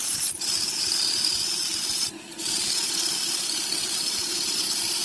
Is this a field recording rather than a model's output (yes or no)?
yes